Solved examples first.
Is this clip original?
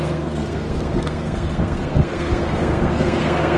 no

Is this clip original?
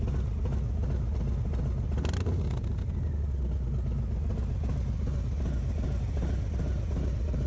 yes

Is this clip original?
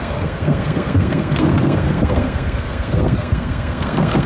no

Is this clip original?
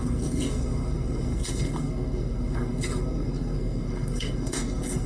no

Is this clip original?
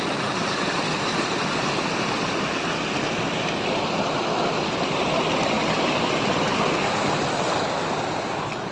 yes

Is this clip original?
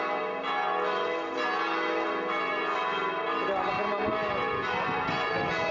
yes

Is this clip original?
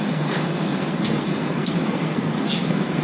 no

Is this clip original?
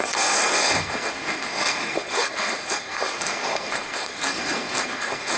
no